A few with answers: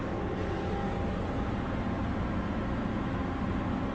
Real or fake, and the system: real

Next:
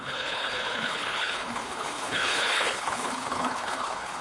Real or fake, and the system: fake, codec, HILCodec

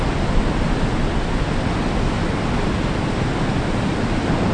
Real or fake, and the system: real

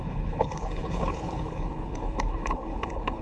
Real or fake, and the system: fake, codec, HILCodec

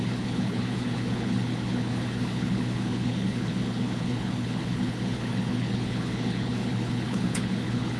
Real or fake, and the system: fake, codec, HILCodec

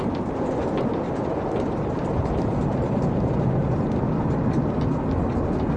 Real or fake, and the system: real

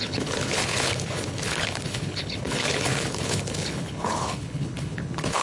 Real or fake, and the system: fake, codec, HILCodec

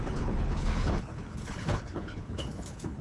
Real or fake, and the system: fake, codec, HILCodec